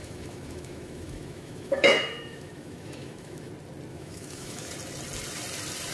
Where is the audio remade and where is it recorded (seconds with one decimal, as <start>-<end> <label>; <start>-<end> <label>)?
0.0-3.5 remade; 3.5-3.9 recorded; 3.9-4.7 remade; 4.7-5.9 recorded